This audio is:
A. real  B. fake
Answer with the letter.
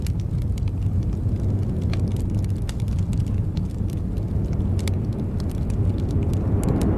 A